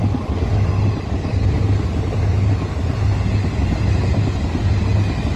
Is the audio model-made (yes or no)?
no